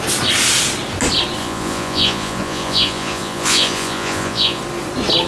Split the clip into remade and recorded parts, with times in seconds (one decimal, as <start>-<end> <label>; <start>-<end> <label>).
0.0-1.4 recorded; 1.4-4.6 remade; 4.6-5.3 recorded